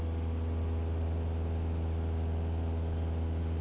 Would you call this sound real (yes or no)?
yes